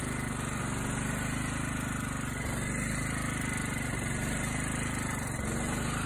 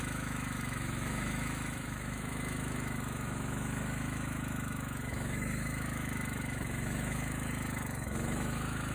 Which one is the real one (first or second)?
first